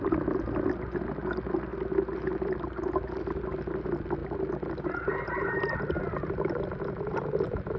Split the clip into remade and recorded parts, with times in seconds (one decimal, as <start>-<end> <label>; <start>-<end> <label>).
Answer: 0.0-7.8 recorded